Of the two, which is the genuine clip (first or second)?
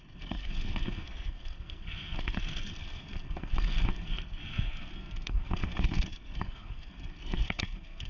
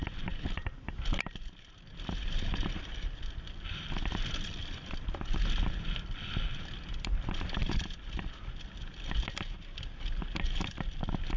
second